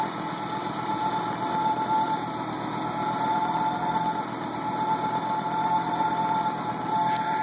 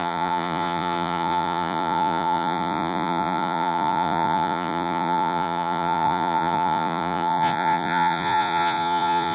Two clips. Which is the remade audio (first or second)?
second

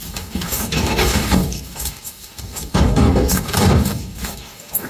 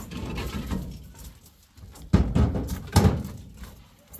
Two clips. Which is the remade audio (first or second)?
first